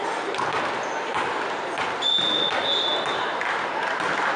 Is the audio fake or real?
real